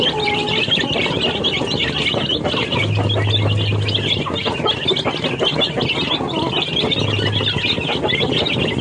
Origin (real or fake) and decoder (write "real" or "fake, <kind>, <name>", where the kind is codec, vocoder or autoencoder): real